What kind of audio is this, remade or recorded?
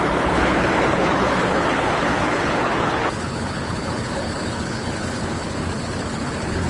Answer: remade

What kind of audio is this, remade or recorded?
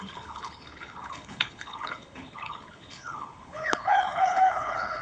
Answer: remade